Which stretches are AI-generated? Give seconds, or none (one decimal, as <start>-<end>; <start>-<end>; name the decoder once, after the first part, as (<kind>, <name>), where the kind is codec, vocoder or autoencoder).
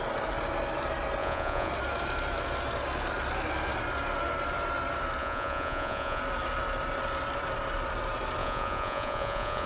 1.2-1.7 (vocoder, Vocos); 5.2-6.2; 8.4-9.7